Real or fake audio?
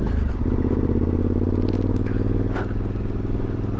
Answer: real